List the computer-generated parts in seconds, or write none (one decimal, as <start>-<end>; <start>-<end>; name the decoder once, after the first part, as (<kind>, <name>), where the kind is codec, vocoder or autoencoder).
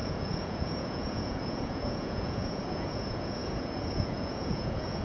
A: 0.0-5.0 (vocoder, Vocos)